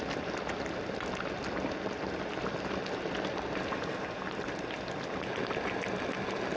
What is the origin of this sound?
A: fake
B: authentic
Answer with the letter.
B